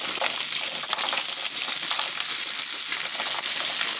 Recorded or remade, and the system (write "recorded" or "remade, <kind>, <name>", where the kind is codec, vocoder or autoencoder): recorded